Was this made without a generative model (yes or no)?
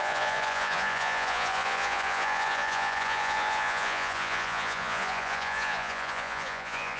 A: no